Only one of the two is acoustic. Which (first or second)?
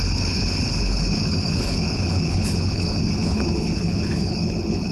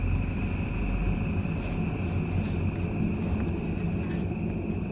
second